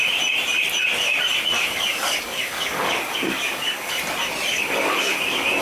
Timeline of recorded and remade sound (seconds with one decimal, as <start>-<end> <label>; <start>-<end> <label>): 0.0-1.5 recorded; 1.5-4.0 remade; 4.0-4.5 recorded; 4.5-5.6 remade